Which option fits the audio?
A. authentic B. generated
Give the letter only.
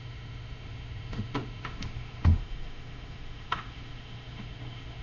B